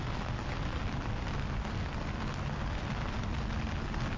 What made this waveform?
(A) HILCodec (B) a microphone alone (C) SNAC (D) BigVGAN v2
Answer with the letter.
B